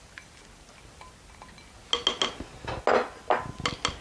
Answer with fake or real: real